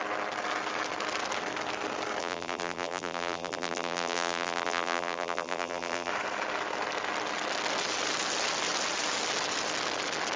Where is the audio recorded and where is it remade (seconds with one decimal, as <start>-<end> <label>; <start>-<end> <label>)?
0.0-2.2 recorded; 2.2-6.1 remade; 6.1-10.4 recorded